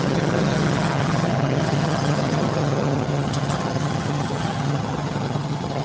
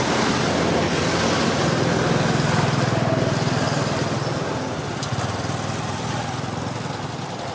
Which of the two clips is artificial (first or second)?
first